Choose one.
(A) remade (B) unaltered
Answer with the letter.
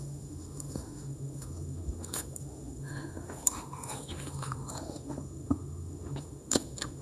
A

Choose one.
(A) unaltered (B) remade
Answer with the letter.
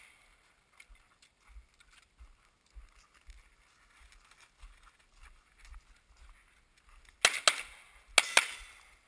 A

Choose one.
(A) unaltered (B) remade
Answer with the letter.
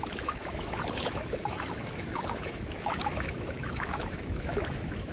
B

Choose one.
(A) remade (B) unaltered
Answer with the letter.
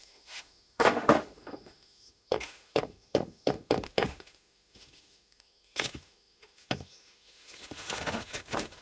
A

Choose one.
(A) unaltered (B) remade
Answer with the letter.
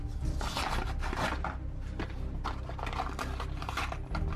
A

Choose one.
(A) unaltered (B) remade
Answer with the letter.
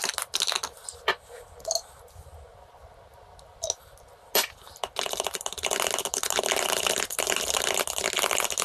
A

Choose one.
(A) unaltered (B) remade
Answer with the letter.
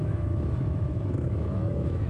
B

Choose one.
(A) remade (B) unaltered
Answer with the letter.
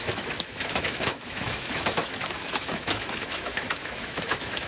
A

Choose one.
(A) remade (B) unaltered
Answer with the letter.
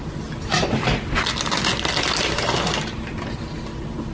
B